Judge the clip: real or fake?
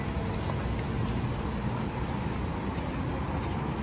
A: real